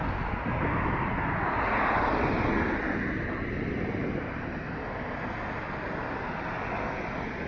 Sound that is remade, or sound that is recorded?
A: recorded